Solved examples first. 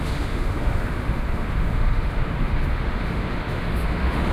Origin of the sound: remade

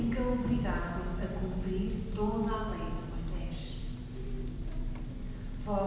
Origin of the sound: recorded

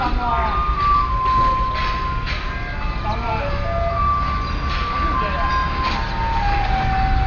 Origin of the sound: recorded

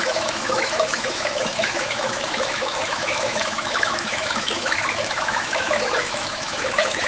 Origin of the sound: remade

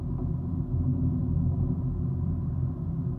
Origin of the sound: recorded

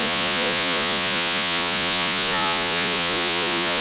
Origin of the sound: remade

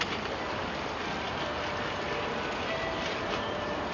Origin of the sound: recorded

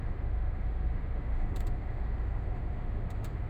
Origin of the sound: remade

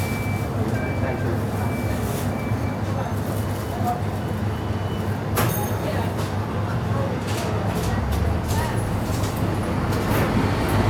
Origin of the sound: recorded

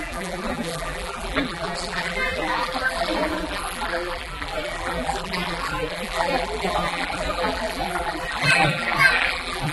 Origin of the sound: remade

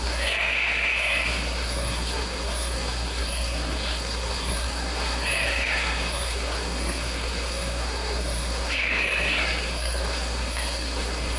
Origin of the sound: remade